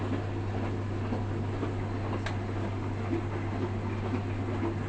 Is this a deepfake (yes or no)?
no